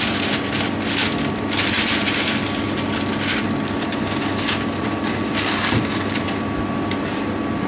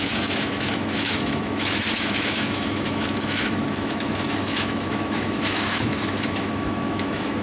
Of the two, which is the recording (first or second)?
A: first